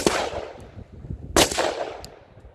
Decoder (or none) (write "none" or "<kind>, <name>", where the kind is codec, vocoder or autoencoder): none